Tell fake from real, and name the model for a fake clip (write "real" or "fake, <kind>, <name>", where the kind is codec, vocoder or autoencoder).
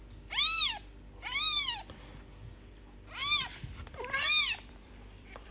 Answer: fake, vocoder, BigVGAN v2